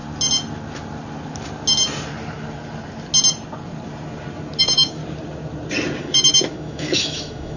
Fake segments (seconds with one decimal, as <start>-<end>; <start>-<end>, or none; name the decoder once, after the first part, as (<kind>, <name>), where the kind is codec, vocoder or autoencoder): 4.6-5.0 (autoencoder, DAC-VAE); 6.0-7.6